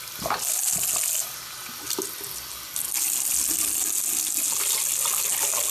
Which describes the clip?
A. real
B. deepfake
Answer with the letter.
A